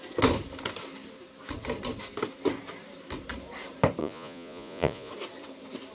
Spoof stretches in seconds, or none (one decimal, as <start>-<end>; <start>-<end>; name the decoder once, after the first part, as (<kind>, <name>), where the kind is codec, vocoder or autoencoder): 4.0-5.1 (vocoder, Vocos)

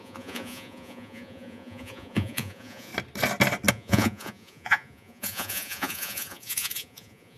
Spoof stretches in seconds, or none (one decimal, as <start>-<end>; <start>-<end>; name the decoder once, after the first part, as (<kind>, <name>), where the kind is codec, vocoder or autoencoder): 0.0-2.9 (vocoder, Vocos); 3.7-7.4

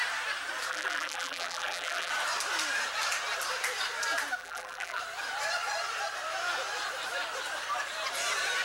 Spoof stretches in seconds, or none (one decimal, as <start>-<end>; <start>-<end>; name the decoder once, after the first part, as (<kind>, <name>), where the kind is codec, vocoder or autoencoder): 0.7-2.1 (vocoder, BigVGAN v2); 4.4-5.0

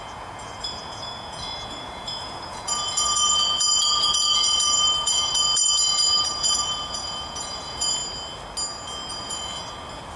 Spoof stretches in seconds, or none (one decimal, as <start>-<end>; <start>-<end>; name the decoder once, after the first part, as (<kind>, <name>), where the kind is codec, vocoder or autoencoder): 0.0-8.0 (vocoder, Vocos); 9.1-9.5

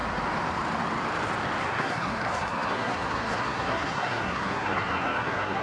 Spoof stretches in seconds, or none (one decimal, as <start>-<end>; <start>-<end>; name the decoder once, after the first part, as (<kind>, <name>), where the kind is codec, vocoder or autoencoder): 1.6-5.6 (codec, SNAC)

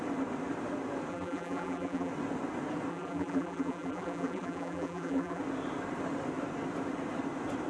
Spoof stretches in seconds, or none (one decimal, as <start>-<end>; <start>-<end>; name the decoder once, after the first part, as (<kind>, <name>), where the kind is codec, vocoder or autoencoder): 1.1-2.1 (vocoder, BigVGAN v2); 2.9-5.4

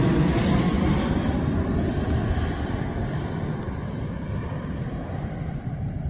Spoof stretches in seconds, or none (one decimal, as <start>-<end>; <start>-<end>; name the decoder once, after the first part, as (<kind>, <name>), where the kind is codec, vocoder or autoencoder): none